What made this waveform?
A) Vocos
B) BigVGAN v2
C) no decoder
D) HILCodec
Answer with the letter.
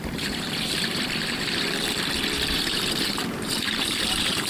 B